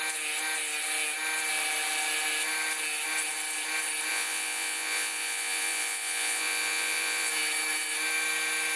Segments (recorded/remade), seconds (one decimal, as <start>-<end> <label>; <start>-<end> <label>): 0.0-4.1 recorded; 4.1-7.3 remade; 7.3-8.8 recorded

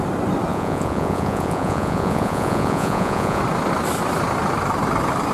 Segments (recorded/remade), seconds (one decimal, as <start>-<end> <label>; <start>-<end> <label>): 0.0-0.5 recorded; 0.5-3.4 remade; 3.4-5.3 recorded

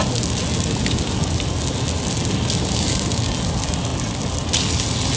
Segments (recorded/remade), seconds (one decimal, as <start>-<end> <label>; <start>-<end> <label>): 0.0-5.2 recorded

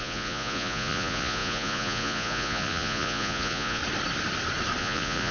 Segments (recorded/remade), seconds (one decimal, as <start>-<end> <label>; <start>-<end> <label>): 0.0-3.8 remade; 3.8-4.8 recorded; 4.8-5.3 remade

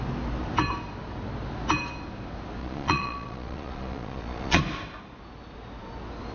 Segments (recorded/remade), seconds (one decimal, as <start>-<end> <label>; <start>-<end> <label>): 0.0-2.6 recorded; 2.6-4.6 remade; 4.6-6.3 recorded